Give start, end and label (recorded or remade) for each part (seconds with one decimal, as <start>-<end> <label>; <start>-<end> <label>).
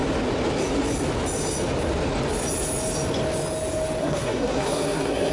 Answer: 0.0-4.0 recorded; 4.0-5.3 remade